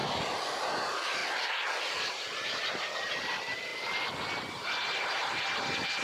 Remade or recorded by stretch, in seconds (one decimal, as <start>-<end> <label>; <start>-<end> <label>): 0.0-0.6 recorded; 0.6-1.2 remade; 1.2-2.1 recorded; 2.1-3.7 remade; 3.7-4.5 recorded; 4.5-6.0 remade